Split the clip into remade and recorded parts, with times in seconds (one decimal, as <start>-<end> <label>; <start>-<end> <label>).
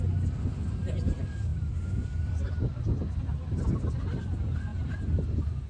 0.0-5.7 recorded